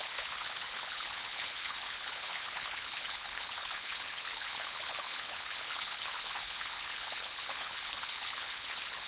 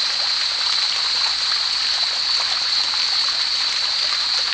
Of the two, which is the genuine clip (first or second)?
second